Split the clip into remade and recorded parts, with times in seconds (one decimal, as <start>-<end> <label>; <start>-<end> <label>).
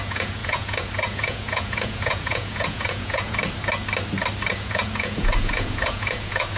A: 0.0-3.4 remade; 3.4-4.5 recorded; 4.5-6.6 remade